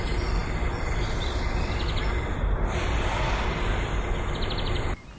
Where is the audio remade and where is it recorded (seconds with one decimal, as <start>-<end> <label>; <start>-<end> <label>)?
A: 0.0-5.2 recorded